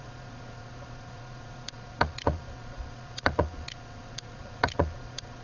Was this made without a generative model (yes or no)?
no